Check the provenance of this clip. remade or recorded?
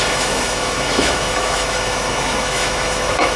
remade